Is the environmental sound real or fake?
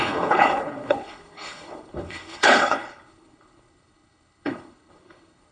fake